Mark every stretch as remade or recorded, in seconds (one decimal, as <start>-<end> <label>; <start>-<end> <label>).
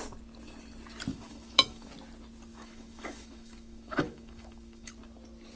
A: 0.0-1.1 recorded; 1.1-1.9 remade; 1.9-2.5 recorded; 2.5-4.9 remade; 4.9-5.6 recorded